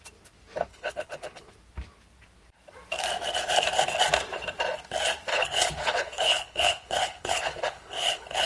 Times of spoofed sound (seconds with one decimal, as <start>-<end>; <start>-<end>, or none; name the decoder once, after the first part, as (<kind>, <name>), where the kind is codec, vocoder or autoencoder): 0.7-1.5 (codec, HILCodec); 5.3-8.5